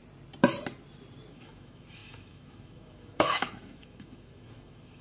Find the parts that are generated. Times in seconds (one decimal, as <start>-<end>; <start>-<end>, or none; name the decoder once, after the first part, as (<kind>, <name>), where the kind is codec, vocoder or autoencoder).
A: 1.3-5.0 (autoencoder, DAC-VAE)